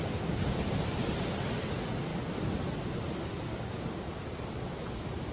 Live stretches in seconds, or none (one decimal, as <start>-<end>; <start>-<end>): 0.0-3.5; 4.2-5.3

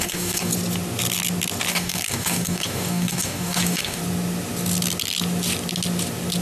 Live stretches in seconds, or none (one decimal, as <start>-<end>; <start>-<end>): 0.5-1.7; 4.0-6.4

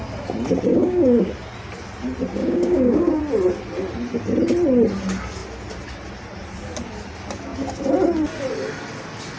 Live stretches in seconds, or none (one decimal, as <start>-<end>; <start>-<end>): 0.0-0.7; 1.3-2.4; 3.2-9.4